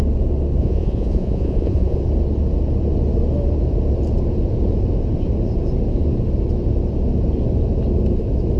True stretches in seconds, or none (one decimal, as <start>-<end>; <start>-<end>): 0.0-0.6; 2.0-8.6